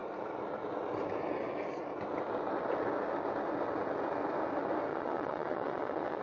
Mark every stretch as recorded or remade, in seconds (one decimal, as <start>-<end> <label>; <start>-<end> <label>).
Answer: 0.0-4.9 recorded; 4.9-6.2 remade